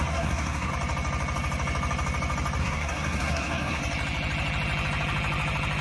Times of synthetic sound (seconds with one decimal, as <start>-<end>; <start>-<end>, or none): 0.0-0.7; 2.6-3.8